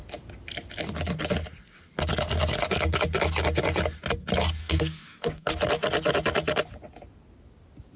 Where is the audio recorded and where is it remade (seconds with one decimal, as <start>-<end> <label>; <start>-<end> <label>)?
0.0-4.6 recorded; 4.6-5.5 remade; 5.5-8.0 recorded